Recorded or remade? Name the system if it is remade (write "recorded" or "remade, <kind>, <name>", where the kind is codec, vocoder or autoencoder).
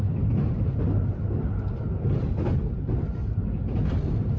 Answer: recorded